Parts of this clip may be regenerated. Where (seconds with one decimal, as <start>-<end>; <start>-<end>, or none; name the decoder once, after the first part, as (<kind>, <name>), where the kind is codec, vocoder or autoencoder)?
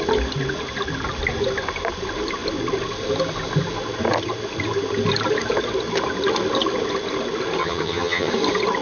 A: 7.6-8.3 (vocoder, HiFi-GAN)